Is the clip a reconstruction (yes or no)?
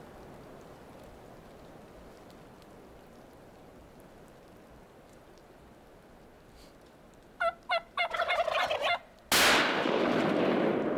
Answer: no